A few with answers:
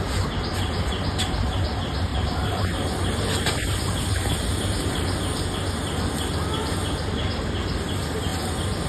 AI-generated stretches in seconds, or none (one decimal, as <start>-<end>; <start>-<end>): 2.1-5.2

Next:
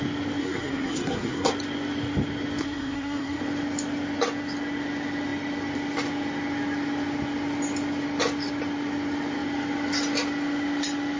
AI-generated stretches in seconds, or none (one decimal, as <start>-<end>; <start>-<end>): 0.4-1.5; 2.6-3.4

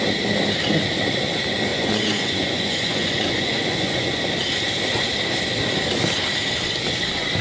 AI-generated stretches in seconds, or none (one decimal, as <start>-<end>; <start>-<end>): 1.7-4.2